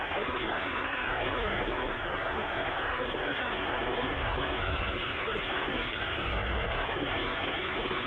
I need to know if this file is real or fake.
fake